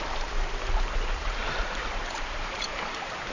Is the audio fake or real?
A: fake